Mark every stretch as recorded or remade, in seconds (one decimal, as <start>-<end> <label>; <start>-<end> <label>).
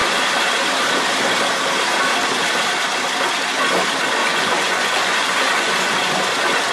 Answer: 0.0-4.2 recorded; 4.2-6.2 remade; 6.2-6.7 recorded